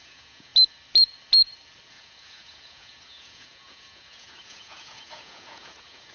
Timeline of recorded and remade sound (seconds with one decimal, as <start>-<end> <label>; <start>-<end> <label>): 0.0-0.5 remade; 0.5-1.9 recorded; 1.9-6.1 remade